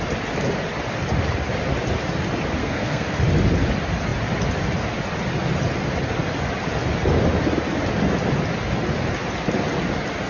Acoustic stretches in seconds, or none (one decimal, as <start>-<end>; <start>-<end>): 0.0-2.6; 3.2-10.3